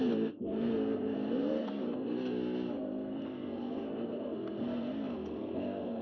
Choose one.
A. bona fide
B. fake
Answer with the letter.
B